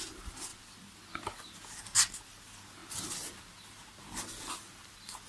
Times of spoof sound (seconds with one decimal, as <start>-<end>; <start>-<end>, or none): none